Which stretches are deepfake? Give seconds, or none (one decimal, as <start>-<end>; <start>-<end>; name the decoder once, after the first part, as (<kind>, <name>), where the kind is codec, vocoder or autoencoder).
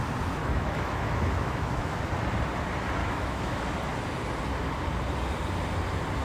0.4-2.0 (autoencoder, DAC-VAE); 3.0-3.6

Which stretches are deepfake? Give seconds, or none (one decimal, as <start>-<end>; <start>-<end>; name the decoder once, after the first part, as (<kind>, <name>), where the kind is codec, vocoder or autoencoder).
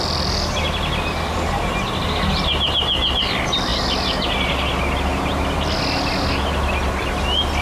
none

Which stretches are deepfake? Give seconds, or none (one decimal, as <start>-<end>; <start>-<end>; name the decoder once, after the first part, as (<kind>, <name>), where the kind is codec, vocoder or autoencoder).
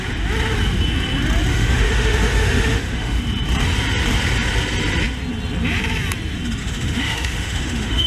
1.5-3.2 (autoencoder, DAC-VAE); 6.6-8.1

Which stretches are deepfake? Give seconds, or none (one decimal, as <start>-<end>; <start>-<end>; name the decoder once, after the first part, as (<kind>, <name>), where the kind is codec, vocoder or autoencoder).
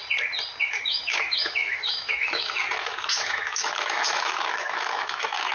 0.6-5.5 (autoencoder, DAC-VAE)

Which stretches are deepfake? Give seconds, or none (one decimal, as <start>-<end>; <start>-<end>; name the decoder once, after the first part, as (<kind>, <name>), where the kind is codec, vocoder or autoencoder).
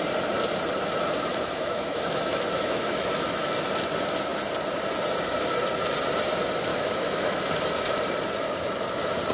1.3-3.5 (autoencoder, DAC-VAE); 6.7-7.5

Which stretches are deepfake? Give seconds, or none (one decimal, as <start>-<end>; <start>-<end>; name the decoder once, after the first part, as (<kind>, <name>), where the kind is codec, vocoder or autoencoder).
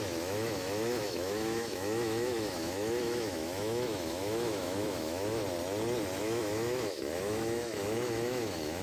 0.0-5.4 (autoencoder, DAC-VAE); 6.2-8.8